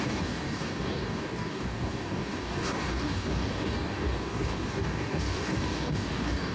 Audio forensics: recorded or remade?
remade